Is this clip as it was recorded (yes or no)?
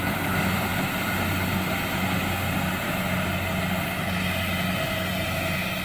yes